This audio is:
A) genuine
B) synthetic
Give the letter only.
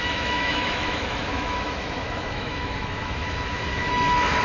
B